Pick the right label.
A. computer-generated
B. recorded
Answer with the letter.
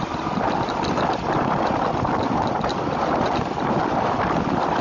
B